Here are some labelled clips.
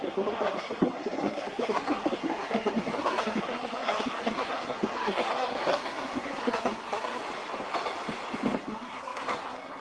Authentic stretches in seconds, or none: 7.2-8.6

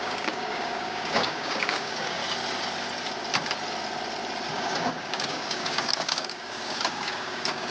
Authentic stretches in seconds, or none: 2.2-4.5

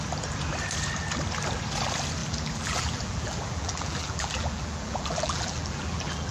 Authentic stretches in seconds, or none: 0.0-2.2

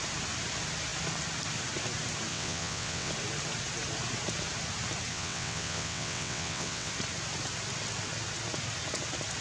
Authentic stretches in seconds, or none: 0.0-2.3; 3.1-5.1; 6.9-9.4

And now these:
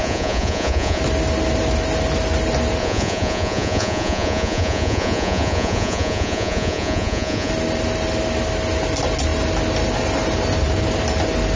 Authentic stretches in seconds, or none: 1.0-2.8; 7.5-11.6

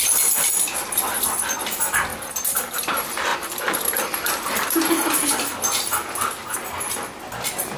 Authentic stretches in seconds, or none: 0.0-7.8

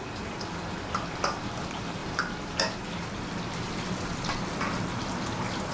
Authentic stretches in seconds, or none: 0.0-5.7

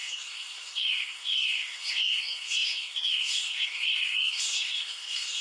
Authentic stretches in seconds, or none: none